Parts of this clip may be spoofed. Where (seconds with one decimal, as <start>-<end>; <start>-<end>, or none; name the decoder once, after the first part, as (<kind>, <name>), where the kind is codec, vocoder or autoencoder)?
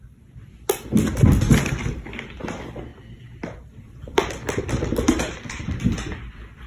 2.9-6.7 (vocoder, BigVGAN v2)